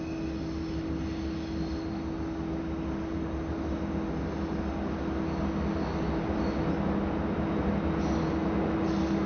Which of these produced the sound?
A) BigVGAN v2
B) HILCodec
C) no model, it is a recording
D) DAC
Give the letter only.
C